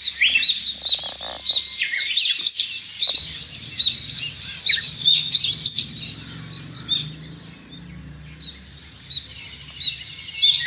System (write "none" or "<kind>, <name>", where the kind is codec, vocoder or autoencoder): none